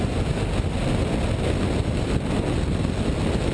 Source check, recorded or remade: recorded